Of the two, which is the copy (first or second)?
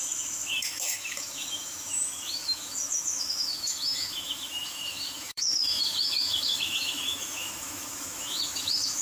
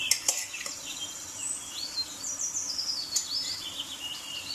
first